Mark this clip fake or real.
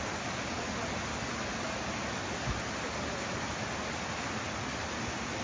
real